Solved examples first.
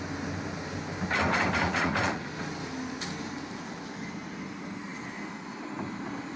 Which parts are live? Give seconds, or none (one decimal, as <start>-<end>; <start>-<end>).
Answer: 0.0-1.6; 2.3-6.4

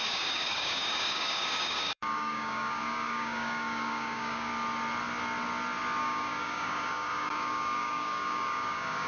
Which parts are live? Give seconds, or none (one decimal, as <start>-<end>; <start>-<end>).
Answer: 4.5-6.0

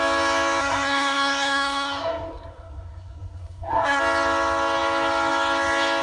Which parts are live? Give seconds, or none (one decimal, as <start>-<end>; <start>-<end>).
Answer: 0.0-0.6; 4.0-6.0